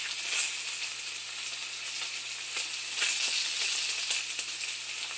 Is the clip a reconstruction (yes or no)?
no